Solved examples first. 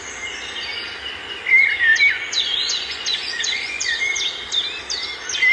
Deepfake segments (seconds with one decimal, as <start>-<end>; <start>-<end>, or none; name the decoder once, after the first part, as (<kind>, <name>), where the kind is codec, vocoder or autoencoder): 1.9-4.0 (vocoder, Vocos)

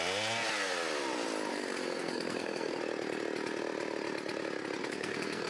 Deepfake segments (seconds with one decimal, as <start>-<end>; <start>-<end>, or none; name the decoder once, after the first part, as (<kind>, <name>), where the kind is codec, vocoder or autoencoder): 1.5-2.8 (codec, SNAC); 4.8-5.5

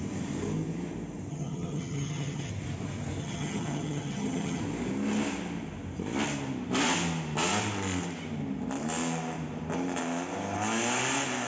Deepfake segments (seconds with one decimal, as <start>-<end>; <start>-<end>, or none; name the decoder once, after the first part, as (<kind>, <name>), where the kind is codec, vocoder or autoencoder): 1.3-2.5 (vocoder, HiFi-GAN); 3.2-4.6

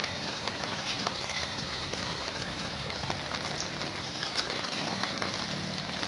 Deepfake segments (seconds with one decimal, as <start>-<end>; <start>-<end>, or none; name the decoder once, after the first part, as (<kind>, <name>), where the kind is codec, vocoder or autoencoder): 0.0-3.1 (codec, SNAC); 4.0-5.3

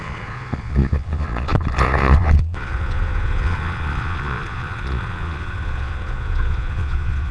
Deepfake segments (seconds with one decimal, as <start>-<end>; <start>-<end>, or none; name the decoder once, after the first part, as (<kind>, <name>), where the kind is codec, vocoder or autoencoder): 0.0-7.3 (vocoder, Vocos)

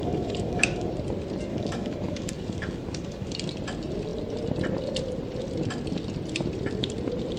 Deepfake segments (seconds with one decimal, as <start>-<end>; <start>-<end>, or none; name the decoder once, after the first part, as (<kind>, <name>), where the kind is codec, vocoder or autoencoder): 0.0-0.9 (codec, DAC); 1.5-3.3

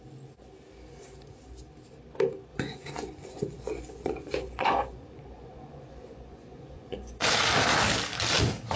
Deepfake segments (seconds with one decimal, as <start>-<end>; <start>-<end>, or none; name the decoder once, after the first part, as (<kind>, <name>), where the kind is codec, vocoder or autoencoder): 2.5-7.3 (vocoder, Vocos)

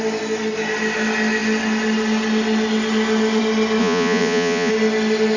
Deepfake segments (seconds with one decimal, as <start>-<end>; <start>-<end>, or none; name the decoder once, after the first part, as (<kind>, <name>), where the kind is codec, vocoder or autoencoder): 3.8-4.7 (vocoder, Vocos)